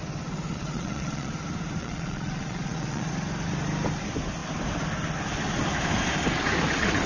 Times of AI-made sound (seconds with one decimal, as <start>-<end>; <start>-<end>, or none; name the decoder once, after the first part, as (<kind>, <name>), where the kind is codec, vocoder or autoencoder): 0.5-1.3 (vocoder, Vocos); 1.8-3.1